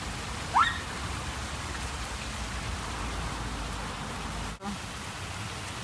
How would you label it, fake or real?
real